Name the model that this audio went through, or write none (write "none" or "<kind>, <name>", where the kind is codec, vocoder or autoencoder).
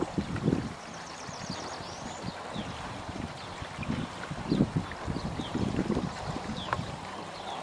none